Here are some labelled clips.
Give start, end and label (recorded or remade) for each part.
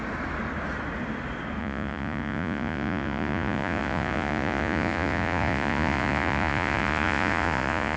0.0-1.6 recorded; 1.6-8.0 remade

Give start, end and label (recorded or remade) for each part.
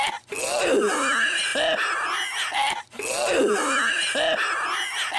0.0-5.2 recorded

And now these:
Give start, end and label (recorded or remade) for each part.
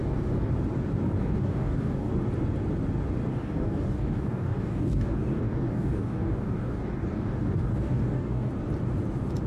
0.0-0.5 remade; 0.5-1.2 recorded; 1.2-2.1 remade; 2.1-3.3 recorded; 3.3-8.5 remade; 8.5-9.5 recorded